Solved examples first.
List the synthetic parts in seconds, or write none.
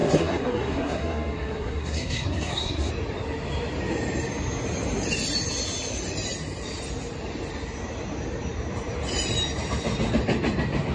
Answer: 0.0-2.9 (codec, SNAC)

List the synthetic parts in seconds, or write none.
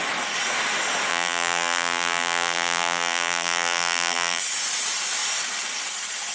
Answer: 1.1-4.4 (vocoder, BigVGAN v2)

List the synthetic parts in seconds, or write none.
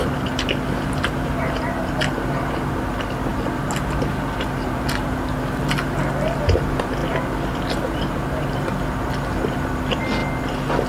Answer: none